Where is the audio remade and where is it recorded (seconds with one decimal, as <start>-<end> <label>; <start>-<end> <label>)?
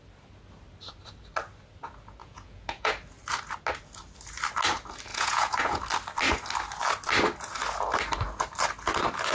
0.0-2.2 recorded; 2.2-2.9 remade; 2.9-5.1 recorded; 5.1-5.8 remade; 5.8-9.3 recorded